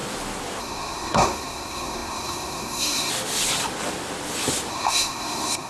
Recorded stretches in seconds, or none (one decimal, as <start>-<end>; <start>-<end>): 0.0-0.6; 3.1-4.7